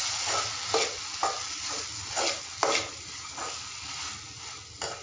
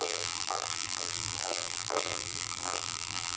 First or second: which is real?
first